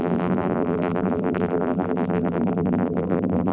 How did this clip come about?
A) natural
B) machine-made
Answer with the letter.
B